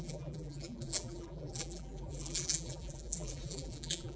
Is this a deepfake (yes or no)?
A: yes